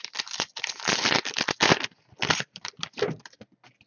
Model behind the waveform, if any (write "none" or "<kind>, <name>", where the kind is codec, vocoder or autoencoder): none